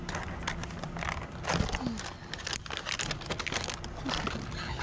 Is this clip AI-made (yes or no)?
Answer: no